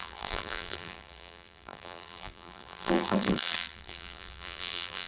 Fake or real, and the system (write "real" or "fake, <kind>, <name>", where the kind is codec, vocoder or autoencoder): fake, vocoder, BigVGAN v2